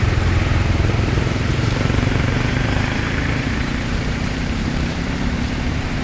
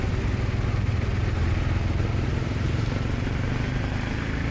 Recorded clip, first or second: second